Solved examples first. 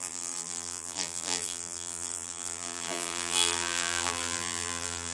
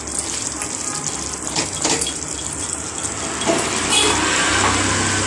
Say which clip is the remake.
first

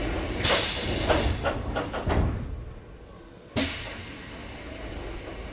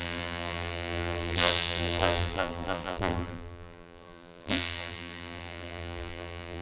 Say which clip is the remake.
second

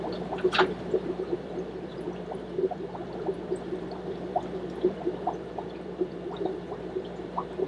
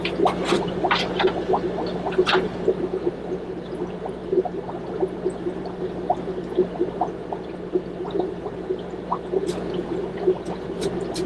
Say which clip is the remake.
first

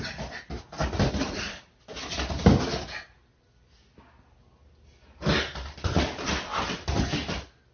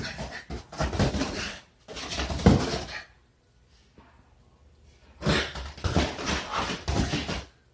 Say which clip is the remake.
second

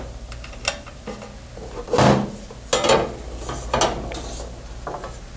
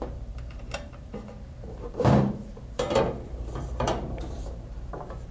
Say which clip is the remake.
second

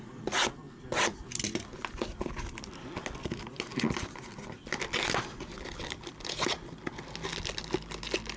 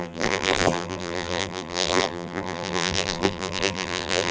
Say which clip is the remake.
second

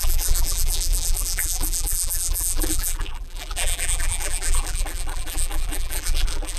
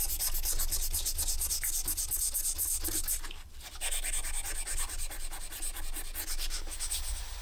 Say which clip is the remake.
first